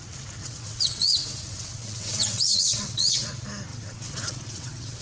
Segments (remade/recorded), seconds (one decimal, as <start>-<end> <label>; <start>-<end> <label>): 0.0-0.4 recorded; 0.4-3.3 remade; 3.3-3.7 recorded; 3.7-5.0 remade